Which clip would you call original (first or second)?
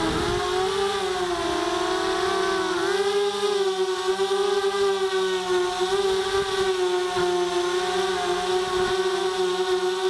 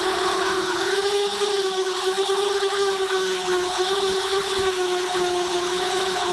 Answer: first